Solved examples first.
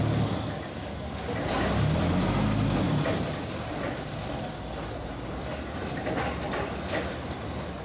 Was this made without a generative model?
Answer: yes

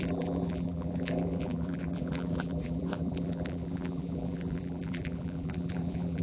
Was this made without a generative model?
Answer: no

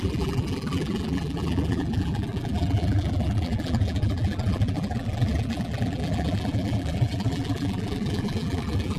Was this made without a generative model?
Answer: no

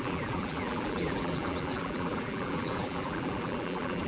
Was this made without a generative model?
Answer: no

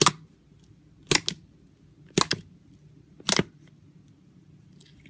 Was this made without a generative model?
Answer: yes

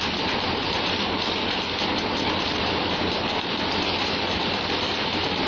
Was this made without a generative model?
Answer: no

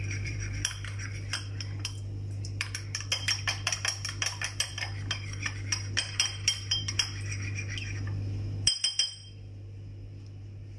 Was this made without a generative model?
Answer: no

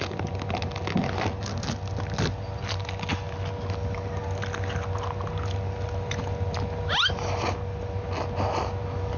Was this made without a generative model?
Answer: yes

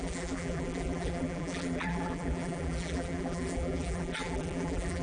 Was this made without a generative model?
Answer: no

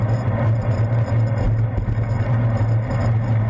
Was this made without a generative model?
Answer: yes